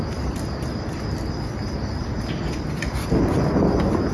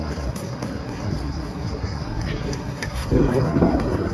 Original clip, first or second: first